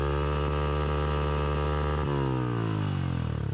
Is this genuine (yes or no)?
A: yes